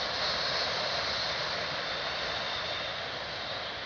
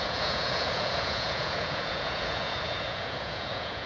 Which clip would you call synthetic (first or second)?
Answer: second